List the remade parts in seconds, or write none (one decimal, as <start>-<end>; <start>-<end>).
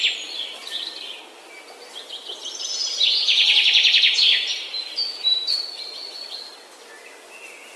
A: 2.8-6.1